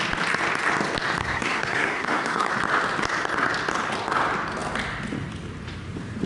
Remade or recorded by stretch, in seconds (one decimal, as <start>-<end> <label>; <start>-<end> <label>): 0.0-1.2 recorded; 1.2-2.5 remade; 2.5-6.3 recorded

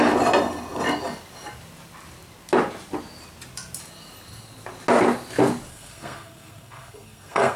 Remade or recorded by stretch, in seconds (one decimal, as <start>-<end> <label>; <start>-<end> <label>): 0.0-5.7 recorded; 5.7-7.6 remade

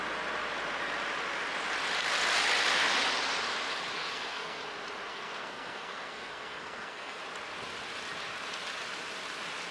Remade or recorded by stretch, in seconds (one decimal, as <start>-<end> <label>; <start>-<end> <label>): 0.0-4.0 recorded; 4.0-4.6 remade; 4.6-5.1 recorded; 5.1-7.2 remade; 7.2-9.7 recorded

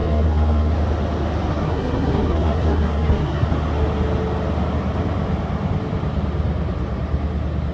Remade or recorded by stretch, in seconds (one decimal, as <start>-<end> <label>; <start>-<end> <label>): 0.0-0.7 remade; 0.7-1.5 recorded; 1.5-3.5 remade; 3.5-7.7 recorded

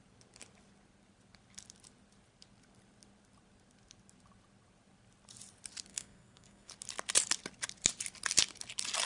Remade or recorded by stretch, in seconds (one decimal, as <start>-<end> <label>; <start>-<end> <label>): 0.0-5.9 recorded; 5.9-6.7 remade; 6.7-9.1 recorded

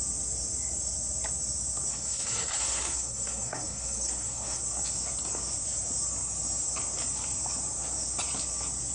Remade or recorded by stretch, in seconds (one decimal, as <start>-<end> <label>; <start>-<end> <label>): 0.0-1.9 recorded; 1.9-4.6 remade; 4.6-8.9 recorded

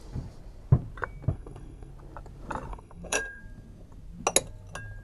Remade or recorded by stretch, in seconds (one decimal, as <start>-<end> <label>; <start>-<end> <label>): 0.0-1.3 recorded; 1.3-1.9 remade; 1.9-2.7 recorded; 2.7-3.4 remade; 3.4-5.0 recorded

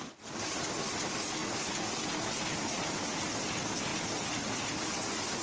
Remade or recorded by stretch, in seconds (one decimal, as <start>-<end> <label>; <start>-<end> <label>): 0.0-5.4 recorded